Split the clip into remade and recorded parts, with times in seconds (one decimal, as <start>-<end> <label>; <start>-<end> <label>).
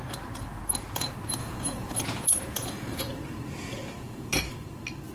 0.0-1.4 recorded; 1.4-3.0 remade; 3.0-3.7 recorded; 3.7-4.3 remade; 4.3-5.1 recorded